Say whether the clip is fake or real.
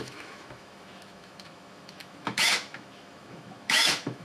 fake